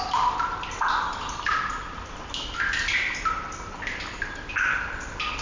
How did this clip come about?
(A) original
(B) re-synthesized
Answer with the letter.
A